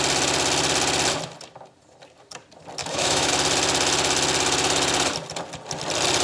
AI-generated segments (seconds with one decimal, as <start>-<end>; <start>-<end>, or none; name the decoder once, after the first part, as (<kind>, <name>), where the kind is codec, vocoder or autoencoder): 2.8-3.3 (autoencoder, DAC-VAE)

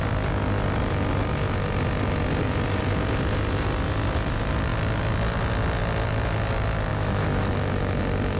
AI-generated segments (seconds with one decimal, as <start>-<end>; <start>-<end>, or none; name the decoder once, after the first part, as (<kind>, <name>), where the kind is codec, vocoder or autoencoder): 6.9-8.0 (autoencoder, DAC-VAE)

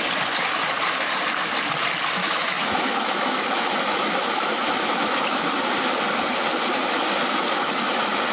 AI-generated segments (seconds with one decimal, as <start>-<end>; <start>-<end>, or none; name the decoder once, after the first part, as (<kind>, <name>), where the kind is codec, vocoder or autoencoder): 2.2-5.4 (autoencoder, DAC-VAE)

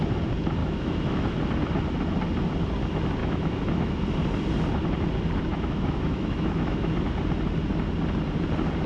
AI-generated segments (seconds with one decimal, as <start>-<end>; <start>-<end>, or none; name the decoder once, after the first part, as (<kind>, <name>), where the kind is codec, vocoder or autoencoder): 0.6-1.4 (autoencoder, DAC-VAE); 3.2-4.0; 5.5-6.9

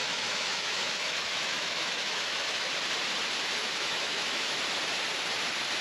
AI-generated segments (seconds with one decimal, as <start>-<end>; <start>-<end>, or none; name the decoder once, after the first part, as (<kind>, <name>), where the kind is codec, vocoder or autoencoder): 0.0-2.7 (autoencoder, DAC-VAE); 3.6-4.5

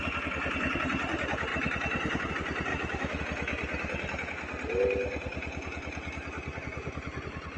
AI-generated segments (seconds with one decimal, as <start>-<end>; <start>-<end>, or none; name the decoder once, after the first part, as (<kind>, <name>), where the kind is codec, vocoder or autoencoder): 2.7-3.2 (autoencoder, DAC-VAE)